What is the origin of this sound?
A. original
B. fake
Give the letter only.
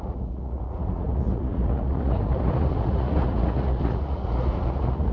B